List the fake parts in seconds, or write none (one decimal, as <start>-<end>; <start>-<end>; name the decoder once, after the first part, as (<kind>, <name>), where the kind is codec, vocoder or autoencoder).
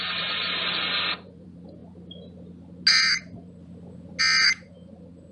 0.0-1.8 (vocoder, BigVGAN v2); 2.9-3.6; 4.2-5.3